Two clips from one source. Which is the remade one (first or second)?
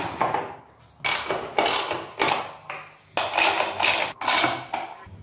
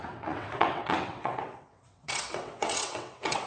second